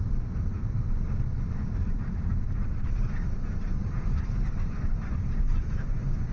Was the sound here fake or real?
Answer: fake